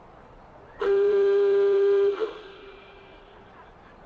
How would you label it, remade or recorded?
remade